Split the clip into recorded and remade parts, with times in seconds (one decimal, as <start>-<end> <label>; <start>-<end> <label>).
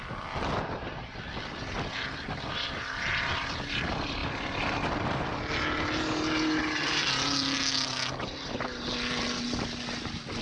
0.0-10.4 recorded